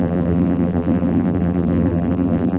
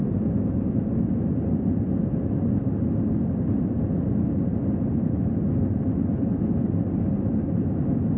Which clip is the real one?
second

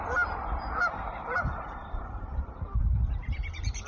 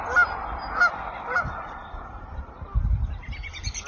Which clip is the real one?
second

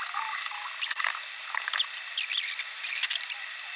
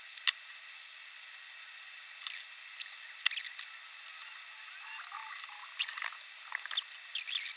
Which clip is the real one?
second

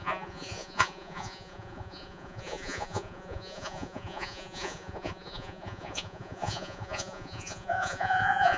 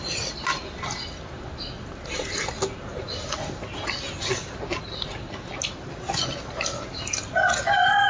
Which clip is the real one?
second